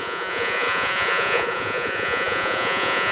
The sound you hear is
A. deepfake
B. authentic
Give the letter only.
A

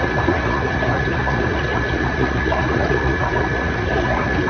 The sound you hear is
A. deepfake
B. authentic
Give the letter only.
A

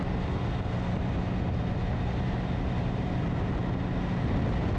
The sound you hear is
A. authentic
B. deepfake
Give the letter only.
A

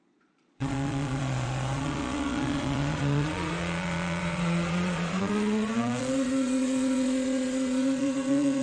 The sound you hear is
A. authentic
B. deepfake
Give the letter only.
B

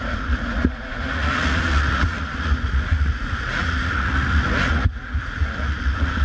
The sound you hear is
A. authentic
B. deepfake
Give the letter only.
B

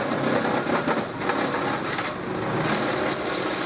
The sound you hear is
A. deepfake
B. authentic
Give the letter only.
B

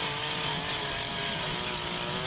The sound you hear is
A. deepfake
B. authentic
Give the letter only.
B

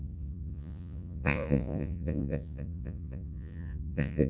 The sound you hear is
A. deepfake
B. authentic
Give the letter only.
A